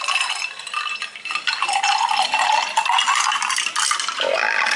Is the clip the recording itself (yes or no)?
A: yes